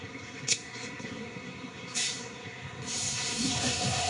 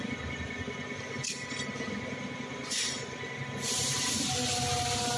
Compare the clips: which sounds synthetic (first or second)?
first